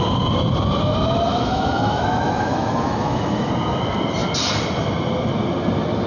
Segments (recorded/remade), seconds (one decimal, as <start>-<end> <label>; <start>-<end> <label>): 0.0-1.3 recorded; 1.3-3.5 remade; 3.5-6.1 recorded